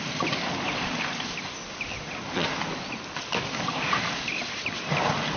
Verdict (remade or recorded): recorded